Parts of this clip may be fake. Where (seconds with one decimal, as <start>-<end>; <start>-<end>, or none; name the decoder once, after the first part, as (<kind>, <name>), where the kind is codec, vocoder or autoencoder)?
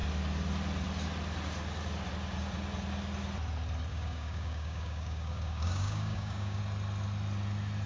3.9-6.6 (codec, DAC)